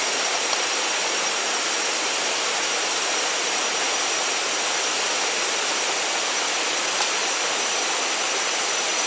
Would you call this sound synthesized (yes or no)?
no